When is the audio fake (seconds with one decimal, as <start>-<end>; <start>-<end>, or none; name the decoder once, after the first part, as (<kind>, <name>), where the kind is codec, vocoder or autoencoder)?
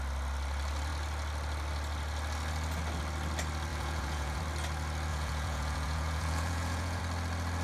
3.7-4.4 (vocoder, Vocos); 5.1-7.0